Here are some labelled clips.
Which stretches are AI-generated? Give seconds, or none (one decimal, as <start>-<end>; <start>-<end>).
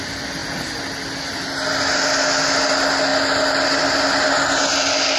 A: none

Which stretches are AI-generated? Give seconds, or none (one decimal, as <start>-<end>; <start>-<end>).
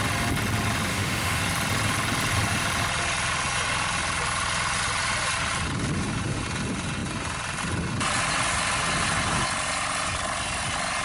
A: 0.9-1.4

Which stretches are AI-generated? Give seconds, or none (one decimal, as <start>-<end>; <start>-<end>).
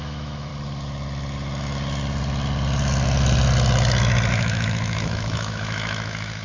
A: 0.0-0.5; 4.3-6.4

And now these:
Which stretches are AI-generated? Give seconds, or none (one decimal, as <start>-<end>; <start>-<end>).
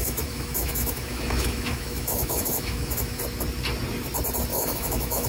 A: 0.0-3.2; 4.5-5.3